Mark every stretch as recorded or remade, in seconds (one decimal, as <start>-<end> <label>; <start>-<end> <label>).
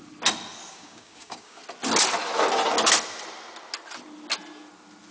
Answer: 0.0-0.7 recorded; 0.7-1.6 remade; 1.6-5.1 recorded